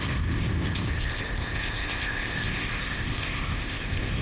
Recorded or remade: remade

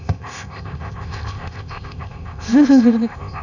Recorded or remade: remade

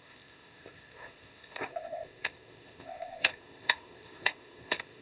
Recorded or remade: remade